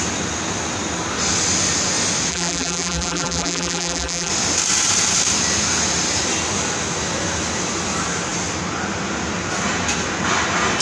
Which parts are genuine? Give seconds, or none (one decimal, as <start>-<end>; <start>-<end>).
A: 0.0-2.3; 4.3-10.8